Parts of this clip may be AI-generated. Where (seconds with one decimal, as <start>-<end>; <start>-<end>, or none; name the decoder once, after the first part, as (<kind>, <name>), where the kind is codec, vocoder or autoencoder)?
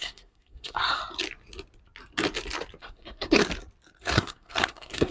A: 0.0-1.0 (codec, SNAC); 2.8-3.4; 4.0-5.1